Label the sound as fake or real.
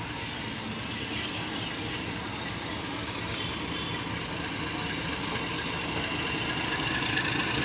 real